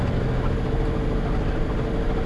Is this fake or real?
real